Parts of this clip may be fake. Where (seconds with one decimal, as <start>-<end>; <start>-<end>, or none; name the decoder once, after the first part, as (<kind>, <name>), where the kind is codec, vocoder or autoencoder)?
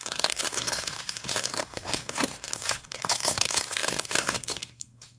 0.0-5.2 (codec, SNAC)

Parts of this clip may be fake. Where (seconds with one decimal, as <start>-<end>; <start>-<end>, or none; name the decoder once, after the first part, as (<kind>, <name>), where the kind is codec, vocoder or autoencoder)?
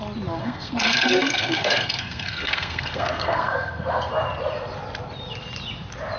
0.4-4.1 (codec, SNAC)